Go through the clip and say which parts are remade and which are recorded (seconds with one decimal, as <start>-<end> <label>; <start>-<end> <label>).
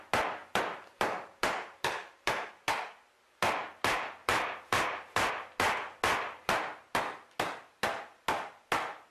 0.0-0.4 recorded; 0.4-2.5 remade; 2.5-4.2 recorded; 4.2-5.3 remade; 5.3-9.1 recorded